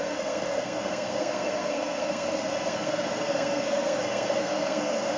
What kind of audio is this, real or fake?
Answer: fake